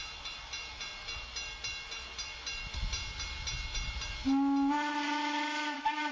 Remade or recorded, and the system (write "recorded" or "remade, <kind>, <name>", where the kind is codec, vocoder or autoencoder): recorded